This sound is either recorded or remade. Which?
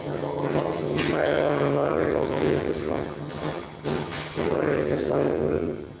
remade